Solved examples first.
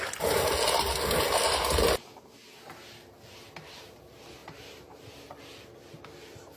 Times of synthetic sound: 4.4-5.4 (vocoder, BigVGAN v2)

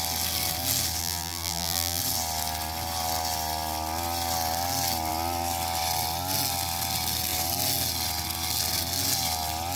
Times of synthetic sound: 1.0-2.0 (vocoder, BigVGAN v2)

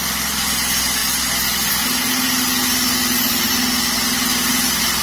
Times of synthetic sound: none

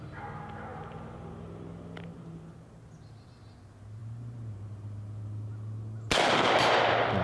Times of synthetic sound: none